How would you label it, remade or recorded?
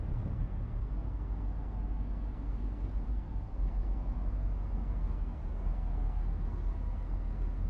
remade